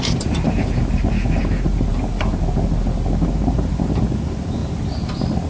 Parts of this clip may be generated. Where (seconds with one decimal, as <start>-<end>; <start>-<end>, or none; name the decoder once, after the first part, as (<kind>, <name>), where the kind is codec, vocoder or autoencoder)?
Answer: 0.0-1.4 (vocoder, BigVGAN v2); 1.9-2.3; 3.7-4.6